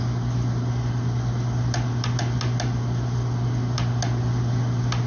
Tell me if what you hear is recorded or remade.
recorded